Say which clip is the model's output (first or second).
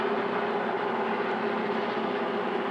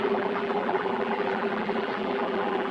second